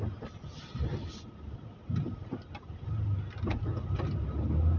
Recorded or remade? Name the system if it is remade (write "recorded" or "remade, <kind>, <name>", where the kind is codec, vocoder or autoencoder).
recorded